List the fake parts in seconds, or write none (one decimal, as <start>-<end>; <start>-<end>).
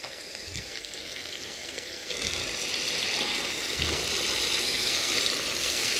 0.0-2.4; 3.2-4.0; 4.6-5.1; 5.6-6.0